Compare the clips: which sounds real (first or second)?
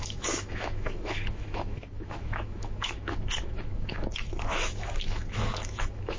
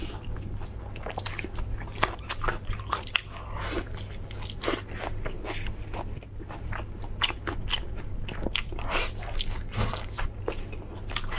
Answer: second